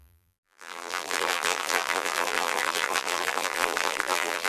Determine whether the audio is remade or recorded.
remade